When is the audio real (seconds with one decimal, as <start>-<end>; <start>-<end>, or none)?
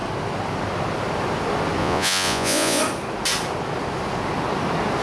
0.0-1.8; 2.8-5.0